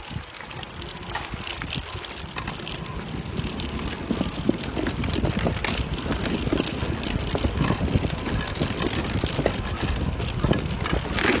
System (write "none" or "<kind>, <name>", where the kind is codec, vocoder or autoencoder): none